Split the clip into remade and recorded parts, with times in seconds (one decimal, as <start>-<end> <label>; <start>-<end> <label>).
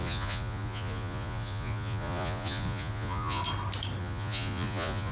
0.0-3.4 remade; 3.4-4.0 recorded; 4.0-5.1 remade